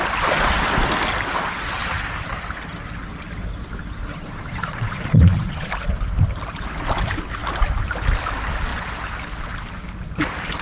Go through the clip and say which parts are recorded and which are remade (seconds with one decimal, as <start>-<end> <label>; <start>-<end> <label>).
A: 0.0-4.1 recorded; 4.1-5.7 remade; 5.7-10.6 recorded